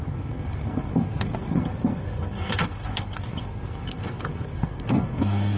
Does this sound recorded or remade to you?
remade